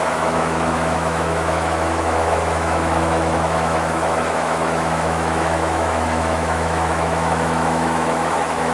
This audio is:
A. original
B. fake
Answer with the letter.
B